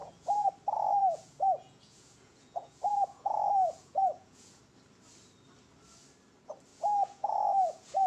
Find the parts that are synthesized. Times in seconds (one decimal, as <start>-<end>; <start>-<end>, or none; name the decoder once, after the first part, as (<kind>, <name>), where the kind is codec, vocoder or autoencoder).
0.0-0.5 (vocoder, Vocos); 1.0-4.6; 6.7-8.1